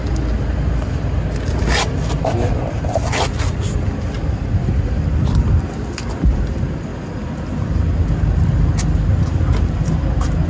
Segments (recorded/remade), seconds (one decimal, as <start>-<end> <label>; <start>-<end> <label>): 0.0-10.5 recorded